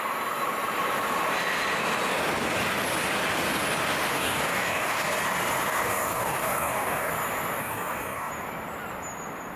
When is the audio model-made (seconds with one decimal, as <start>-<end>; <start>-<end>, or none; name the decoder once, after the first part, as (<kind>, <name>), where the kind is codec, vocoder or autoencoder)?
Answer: 4.1-5.1 (codec, DAC); 5.7-7.1; 7.6-8.3